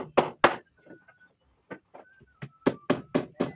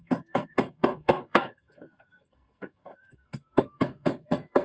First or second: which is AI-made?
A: second